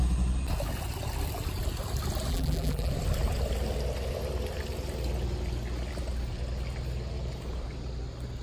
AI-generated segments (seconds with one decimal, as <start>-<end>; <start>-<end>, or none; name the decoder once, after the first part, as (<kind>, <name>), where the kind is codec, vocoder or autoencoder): 2.3-2.9 (vocoder, BigVGAN v2)